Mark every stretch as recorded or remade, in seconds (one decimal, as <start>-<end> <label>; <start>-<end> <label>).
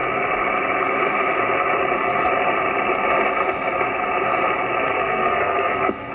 0.0-5.0 recorded; 5.0-6.1 remade